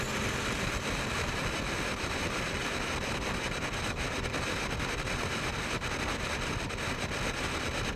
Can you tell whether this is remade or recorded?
recorded